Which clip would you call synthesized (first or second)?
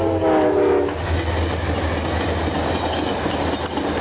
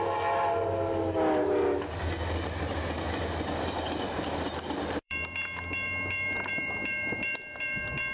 second